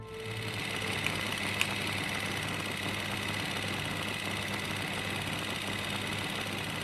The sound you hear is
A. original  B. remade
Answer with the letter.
A